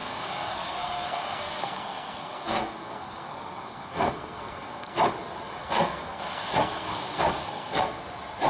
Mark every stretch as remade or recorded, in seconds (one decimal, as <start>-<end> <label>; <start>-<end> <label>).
0.0-5.0 remade; 5.0-5.6 recorded; 5.6-8.0 remade; 8.0-8.5 recorded

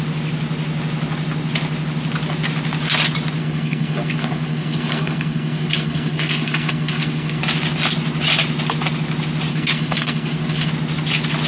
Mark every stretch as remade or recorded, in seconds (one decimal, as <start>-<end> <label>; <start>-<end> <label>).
0.0-3.4 recorded; 3.4-7.4 remade; 7.4-9.5 recorded; 9.5-10.7 remade; 10.7-11.5 recorded

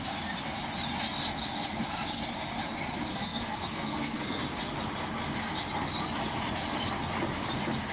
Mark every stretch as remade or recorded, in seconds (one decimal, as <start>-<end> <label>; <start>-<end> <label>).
0.0-3.1 recorded; 3.1-4.4 remade; 4.4-7.9 recorded

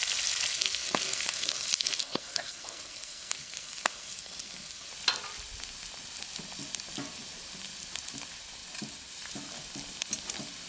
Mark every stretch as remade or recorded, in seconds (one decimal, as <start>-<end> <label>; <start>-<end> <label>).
0.0-0.5 recorded; 0.5-4.9 remade; 4.9-10.7 recorded

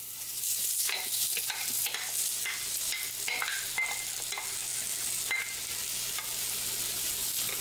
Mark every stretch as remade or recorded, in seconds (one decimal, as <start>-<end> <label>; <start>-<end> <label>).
0.0-7.6 recorded